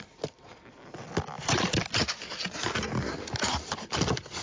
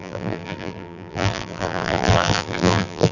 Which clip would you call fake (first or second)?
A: second